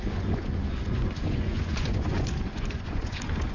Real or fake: fake